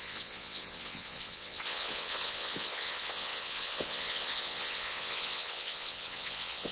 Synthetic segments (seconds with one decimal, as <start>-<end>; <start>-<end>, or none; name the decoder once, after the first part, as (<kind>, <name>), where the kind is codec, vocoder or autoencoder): 0.0-6.7 (vocoder, WaveNeXt)